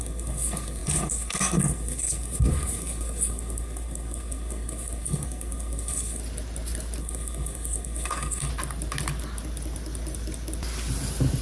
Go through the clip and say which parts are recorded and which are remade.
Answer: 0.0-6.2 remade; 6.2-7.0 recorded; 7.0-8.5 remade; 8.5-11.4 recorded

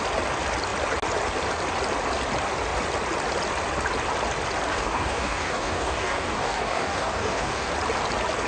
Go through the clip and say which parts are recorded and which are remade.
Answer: 0.0-4.7 recorded; 4.7-7.7 remade; 7.7-8.5 recorded

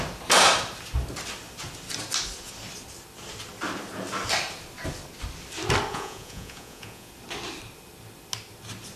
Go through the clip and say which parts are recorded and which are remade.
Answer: 0.0-5.9 recorded; 5.9-7.1 remade; 7.1-9.0 recorded

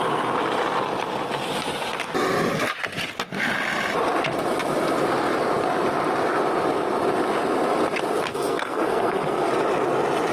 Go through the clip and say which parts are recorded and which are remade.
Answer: 0.0-8.3 recorded; 8.3-9.5 remade; 9.5-10.3 recorded

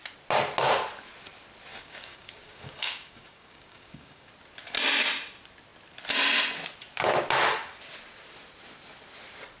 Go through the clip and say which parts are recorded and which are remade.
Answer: 0.0-1.7 recorded; 1.7-4.3 remade; 4.3-9.6 recorded

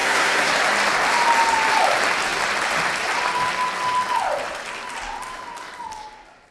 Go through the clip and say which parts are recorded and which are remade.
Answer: 0.0-0.5 remade; 0.5-6.5 recorded